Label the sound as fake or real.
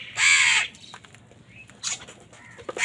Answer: real